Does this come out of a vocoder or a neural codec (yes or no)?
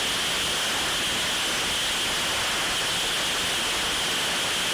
no